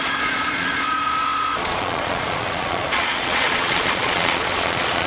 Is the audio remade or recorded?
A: remade